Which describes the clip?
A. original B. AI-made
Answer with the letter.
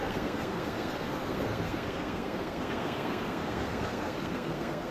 B